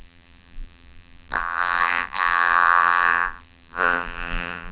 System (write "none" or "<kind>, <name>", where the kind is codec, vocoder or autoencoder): vocoder, BigVGAN v2